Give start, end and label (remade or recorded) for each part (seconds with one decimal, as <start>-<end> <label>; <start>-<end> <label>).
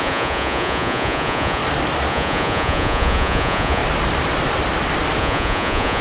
0.0-1.6 remade; 1.6-2.1 recorded; 2.1-3.8 remade; 3.8-5.2 recorded; 5.2-6.0 remade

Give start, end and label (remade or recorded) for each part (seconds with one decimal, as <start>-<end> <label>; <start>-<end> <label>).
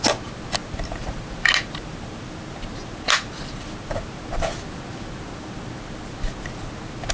0.0-7.1 recorded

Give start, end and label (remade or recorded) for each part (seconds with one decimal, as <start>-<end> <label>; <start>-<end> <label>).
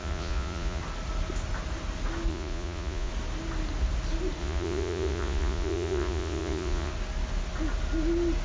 0.0-0.8 remade; 0.8-2.3 recorded; 2.3-3.1 remade; 3.1-4.4 recorded; 4.4-6.9 remade; 6.9-8.4 recorded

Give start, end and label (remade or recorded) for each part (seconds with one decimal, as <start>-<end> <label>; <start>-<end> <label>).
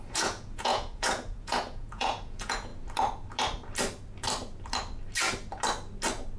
0.0-2.7 remade; 2.7-6.4 recorded